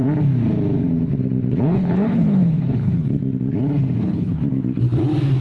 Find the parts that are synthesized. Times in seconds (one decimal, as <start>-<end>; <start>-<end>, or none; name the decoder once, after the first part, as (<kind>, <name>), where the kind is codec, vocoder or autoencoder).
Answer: 1.5-3.2 (codec, HILCodec); 4.0-4.4